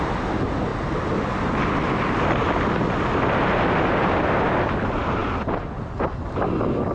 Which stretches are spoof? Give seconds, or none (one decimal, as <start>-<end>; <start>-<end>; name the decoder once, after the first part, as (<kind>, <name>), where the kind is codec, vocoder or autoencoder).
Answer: none